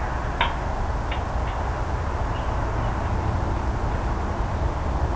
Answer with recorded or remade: recorded